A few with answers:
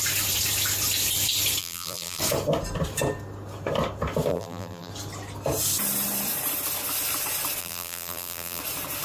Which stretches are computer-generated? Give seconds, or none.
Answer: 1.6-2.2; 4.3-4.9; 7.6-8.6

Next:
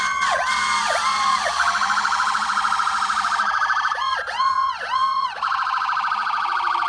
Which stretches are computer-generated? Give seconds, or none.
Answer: 0.0-6.9

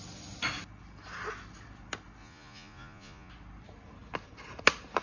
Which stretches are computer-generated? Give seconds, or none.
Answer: 2.2-3.3

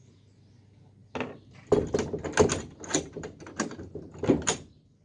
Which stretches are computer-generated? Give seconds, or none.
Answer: none

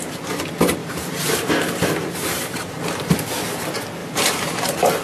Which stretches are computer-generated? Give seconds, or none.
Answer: 0.8-3.0; 4.0-5.0

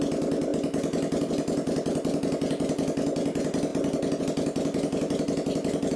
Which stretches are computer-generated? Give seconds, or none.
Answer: none

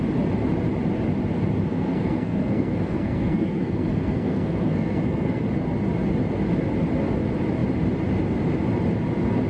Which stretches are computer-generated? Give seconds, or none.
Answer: 1.7-5.4